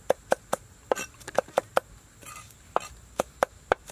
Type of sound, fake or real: fake